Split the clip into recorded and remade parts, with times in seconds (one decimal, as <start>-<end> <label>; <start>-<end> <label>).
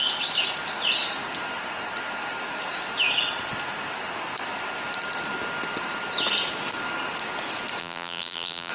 0.0-7.8 recorded; 7.8-8.7 remade